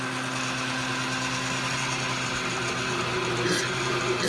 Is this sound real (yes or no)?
yes